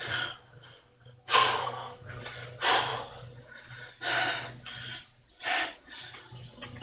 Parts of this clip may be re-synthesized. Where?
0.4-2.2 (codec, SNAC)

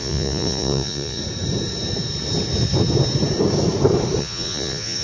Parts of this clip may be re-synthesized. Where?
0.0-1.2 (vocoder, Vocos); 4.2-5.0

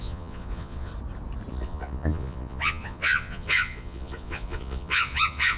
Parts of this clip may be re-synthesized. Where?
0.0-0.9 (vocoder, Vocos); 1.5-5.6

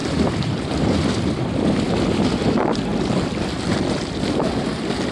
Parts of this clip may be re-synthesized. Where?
0.0-2.9 (vocoder, BigVGAN v2); 3.7-5.1

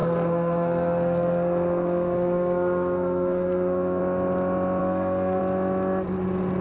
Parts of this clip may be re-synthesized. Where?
0.0-4.0 (codec, SNAC); 4.8-5.4